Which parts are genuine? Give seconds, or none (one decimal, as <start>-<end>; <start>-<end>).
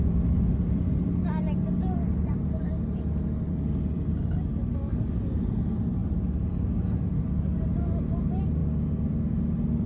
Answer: 0.0-9.9